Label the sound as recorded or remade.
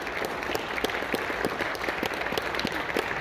recorded